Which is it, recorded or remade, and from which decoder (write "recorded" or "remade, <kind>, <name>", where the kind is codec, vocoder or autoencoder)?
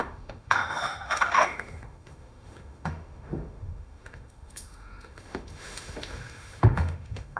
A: remade, autoencoder, DAC-VAE